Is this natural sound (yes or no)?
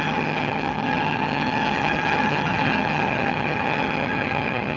no